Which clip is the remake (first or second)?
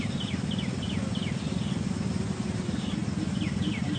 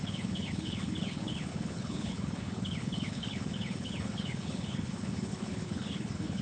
second